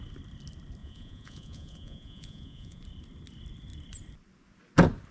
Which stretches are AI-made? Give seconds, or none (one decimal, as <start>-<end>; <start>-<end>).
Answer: 0.8-2.8